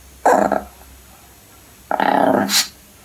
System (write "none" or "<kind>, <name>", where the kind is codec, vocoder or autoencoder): none